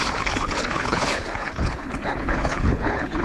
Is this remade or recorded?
remade